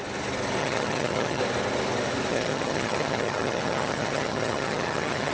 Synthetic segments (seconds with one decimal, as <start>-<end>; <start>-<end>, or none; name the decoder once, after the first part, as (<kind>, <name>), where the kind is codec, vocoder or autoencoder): 0.6-1.4 (vocoder, HiFi-GAN); 2.3-5.3